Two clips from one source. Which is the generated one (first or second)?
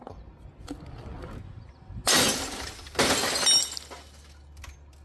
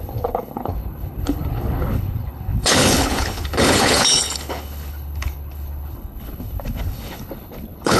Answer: second